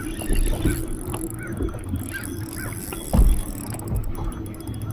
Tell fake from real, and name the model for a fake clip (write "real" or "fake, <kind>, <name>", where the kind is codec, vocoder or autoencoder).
real